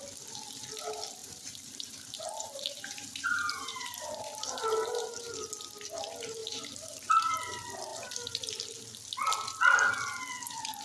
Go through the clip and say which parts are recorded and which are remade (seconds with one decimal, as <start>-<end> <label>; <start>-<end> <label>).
0.0-1.2 recorded; 1.2-5.5 remade; 5.5-6.4 recorded; 6.4-7.3 remade; 7.3-10.8 recorded